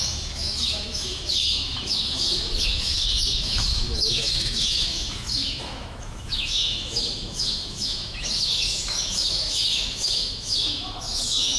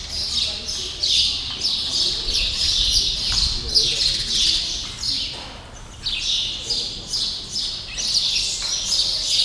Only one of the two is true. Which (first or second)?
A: second